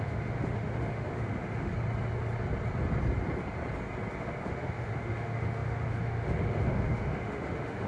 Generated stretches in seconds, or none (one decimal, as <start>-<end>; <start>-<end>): 0.0-1.7; 4.2-7.9